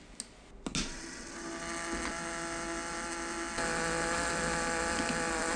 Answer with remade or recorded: recorded